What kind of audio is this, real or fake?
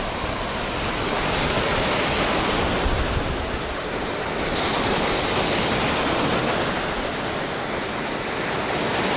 real